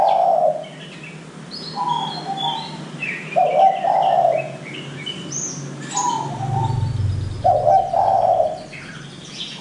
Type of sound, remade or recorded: recorded